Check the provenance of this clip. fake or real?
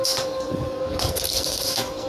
fake